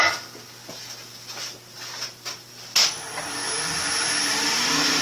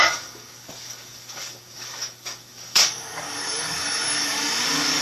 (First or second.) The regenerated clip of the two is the second